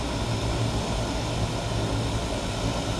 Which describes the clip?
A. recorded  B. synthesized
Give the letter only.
A